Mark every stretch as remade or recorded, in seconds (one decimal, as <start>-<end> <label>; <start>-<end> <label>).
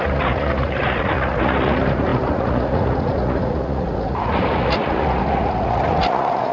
0.0-6.5 remade